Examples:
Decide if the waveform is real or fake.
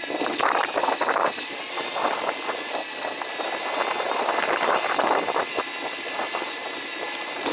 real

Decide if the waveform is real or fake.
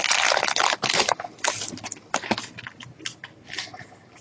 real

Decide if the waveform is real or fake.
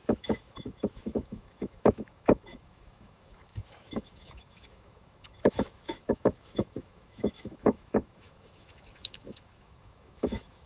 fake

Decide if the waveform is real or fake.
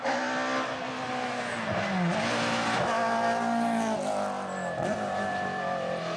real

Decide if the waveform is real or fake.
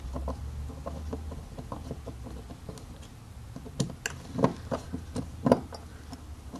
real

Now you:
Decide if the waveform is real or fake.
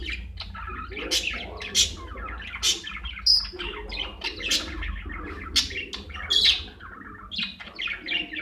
real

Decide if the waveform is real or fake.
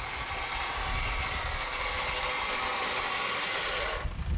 real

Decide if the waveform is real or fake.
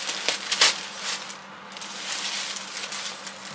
real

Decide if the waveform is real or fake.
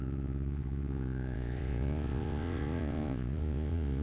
fake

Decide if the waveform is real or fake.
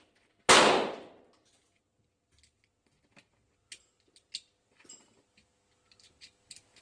real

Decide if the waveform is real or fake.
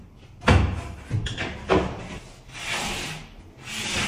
real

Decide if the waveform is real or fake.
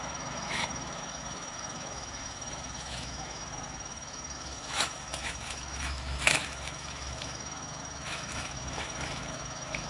fake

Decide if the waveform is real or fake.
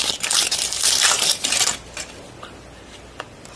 real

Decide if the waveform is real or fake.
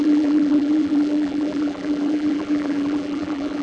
fake